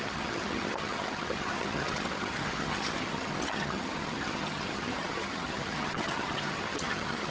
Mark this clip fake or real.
fake